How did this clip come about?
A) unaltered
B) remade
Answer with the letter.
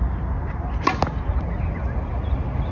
A